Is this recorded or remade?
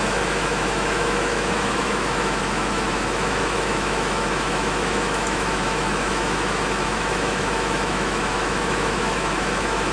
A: remade